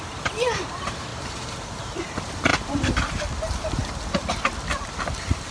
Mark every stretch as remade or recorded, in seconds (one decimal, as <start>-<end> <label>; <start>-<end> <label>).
0.0-3.8 remade; 3.8-5.5 recorded